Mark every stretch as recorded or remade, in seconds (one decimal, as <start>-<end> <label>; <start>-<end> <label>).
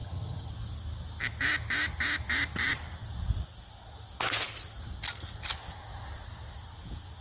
0.0-0.5 remade; 0.5-7.2 recorded